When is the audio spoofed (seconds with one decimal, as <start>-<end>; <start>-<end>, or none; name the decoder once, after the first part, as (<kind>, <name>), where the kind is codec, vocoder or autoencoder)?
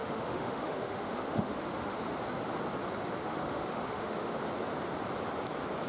0.0-2.0 (autoencoder, DAC-VAE); 3.2-4.4